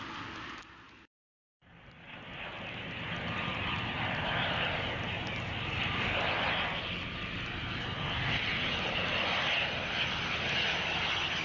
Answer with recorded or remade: recorded